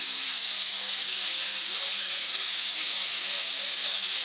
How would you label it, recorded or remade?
remade